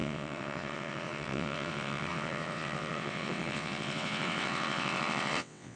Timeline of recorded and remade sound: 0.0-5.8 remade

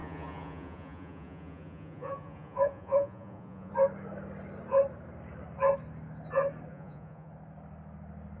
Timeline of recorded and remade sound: 0.0-3.7 remade; 3.7-6.7 recorded; 6.7-7.3 remade; 7.3-8.4 recorded

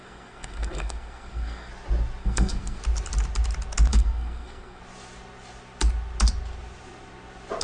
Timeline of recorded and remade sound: 0.0-1.7 remade; 1.7-2.2 recorded; 2.2-2.8 remade; 2.8-3.9 recorded; 3.9-4.8 remade; 4.8-7.6 recorded

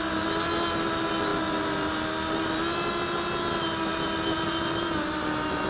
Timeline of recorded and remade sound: 0.0-5.7 recorded

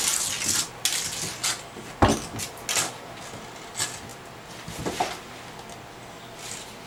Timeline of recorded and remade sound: 0.0-6.9 recorded